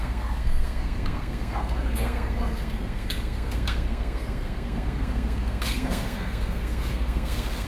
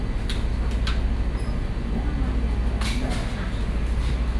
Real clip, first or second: second